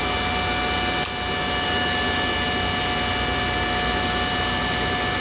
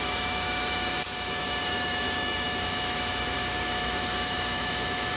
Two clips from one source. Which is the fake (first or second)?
second